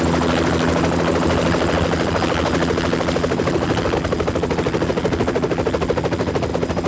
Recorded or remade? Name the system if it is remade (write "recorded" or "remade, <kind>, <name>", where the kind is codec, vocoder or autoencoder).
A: recorded